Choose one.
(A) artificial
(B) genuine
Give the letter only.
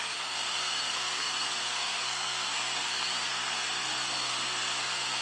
A